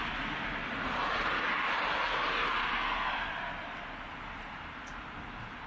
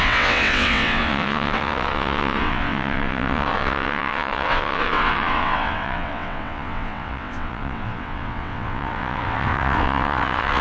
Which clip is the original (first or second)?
first